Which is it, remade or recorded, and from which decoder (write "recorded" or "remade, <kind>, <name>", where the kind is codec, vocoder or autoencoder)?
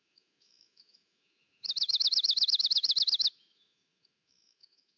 remade, autoencoder, DAC-VAE